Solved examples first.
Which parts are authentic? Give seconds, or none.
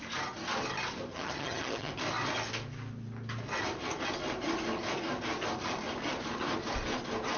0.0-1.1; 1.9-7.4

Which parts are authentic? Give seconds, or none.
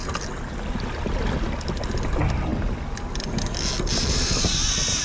0.0-5.0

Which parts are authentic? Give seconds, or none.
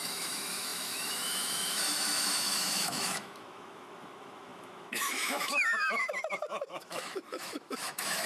none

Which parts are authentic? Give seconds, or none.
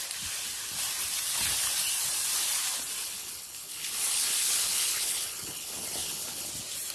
0.0-3.0; 6.5-6.9